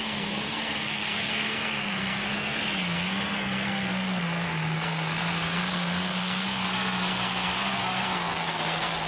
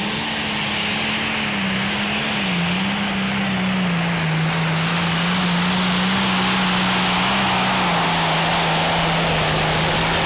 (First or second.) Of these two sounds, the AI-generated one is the first